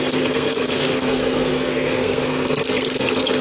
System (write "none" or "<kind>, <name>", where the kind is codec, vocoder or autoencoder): codec, SNAC